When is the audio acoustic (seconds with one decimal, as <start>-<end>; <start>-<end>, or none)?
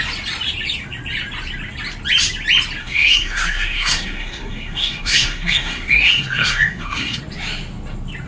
0.0-2.8; 7.2-8.3